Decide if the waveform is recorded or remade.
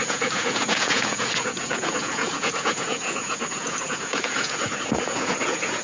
remade